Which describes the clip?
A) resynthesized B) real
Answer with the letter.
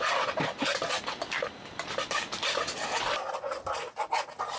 A